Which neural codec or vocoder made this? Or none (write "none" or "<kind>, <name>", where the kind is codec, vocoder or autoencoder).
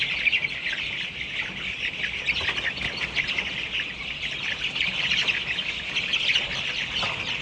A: none